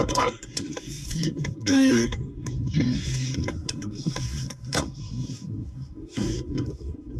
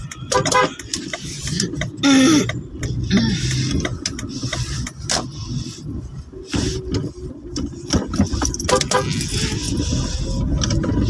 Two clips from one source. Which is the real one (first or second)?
second